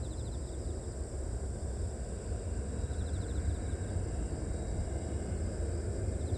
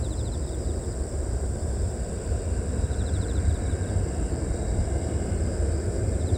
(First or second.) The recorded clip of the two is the first